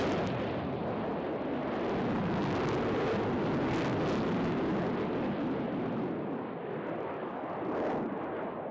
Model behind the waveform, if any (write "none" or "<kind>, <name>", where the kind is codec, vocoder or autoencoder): none